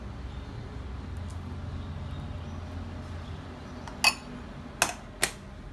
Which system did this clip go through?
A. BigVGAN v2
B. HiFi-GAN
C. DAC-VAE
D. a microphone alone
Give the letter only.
D